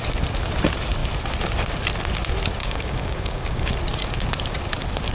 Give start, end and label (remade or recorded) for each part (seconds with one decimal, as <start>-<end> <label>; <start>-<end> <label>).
0.0-2.6 recorded; 2.6-3.7 remade; 3.7-5.1 recorded